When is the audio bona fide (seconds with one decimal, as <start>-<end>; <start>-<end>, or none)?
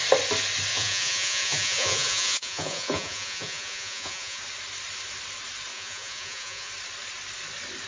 0.0-0.7; 4.4-5.7; 6.7-7.9